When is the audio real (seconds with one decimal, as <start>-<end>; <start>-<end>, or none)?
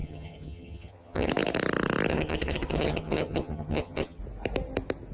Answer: 1.3-2.1; 4.2-5.1